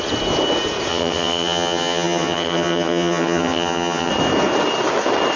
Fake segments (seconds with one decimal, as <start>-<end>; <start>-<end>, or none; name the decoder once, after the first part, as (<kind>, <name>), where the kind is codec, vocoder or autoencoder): 0.9-4.1 (vocoder, HiFi-GAN)